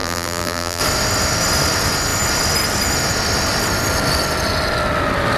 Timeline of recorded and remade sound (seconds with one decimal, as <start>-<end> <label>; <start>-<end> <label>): 0.0-0.8 remade; 0.8-5.4 recorded